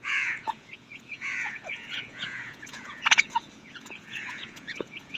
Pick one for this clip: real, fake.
fake